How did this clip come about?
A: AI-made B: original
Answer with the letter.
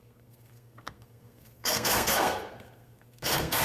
A